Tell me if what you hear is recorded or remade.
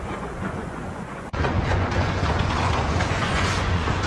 remade